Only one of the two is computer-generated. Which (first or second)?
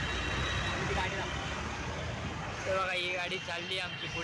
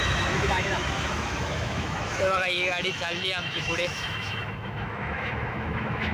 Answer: second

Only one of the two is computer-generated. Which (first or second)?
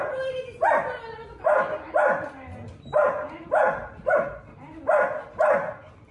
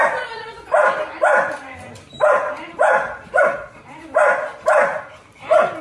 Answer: second